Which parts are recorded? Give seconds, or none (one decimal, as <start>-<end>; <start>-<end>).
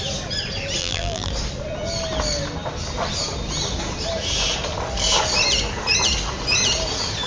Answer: 0.0-0.8; 1.3-7.3